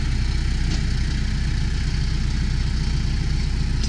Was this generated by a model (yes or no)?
no